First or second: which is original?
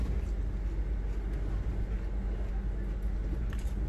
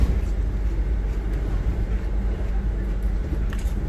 first